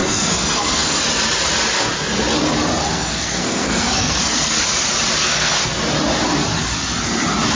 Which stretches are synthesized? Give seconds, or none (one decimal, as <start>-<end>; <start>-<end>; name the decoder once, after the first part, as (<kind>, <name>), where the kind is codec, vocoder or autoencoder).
0.0-1.0 (codec, SNAC); 2.8-4.6; 5.2-5.7